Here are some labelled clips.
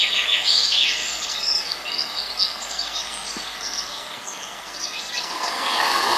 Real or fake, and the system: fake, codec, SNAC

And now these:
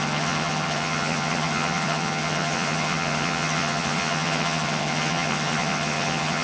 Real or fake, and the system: fake, vocoder, HiFi-GAN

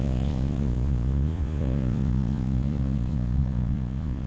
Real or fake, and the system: fake, vocoder, Vocos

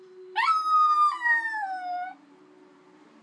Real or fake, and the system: real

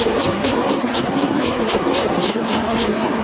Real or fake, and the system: fake, codec, SNAC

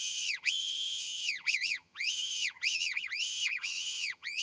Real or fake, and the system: fake, vocoder, HiFi-GAN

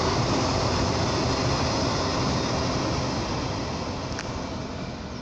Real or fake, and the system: real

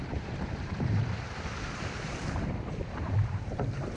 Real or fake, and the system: fake, vocoder, BigVGAN v2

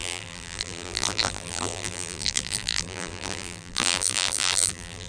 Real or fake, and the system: fake, vocoder, BigVGAN v2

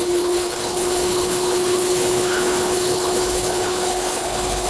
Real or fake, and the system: fake, codec, HILCodec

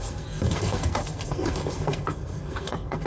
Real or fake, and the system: fake, codec, SNAC